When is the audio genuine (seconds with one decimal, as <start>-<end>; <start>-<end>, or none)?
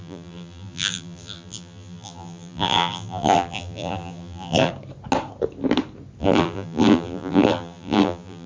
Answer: 4.7-6.2